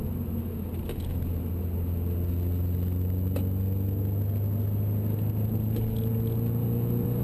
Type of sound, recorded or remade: recorded